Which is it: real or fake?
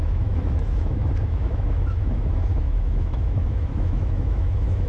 fake